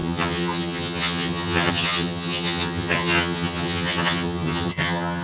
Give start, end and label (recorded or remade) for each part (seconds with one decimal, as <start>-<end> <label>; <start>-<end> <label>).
0.0-5.2 remade